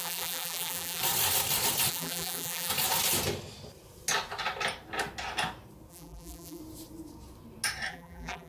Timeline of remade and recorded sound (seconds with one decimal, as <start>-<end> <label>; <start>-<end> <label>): 0.0-1.0 remade; 1.0-1.9 recorded; 1.9-2.7 remade; 2.7-5.9 recorded; 5.9-6.6 remade; 6.6-7.9 recorded; 7.9-8.5 remade